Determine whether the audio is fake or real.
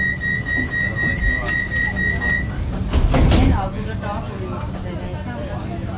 real